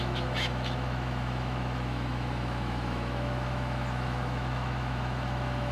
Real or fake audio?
fake